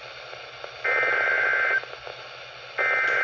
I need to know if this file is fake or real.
real